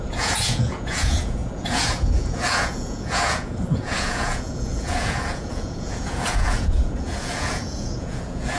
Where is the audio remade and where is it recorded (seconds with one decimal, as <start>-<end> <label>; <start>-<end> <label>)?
0.0-8.6 remade